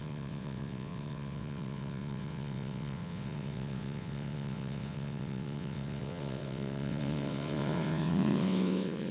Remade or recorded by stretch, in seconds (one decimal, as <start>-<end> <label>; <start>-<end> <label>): 0.0-9.1 remade